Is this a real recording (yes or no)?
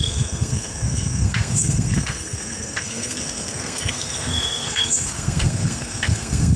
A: no